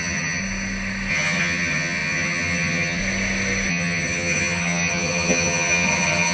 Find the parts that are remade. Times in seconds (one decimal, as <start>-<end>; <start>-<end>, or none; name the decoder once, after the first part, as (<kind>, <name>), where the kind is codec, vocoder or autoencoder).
0.0-0.4 (vocoder, HiFi-GAN); 1.1-3.0; 3.7-6.3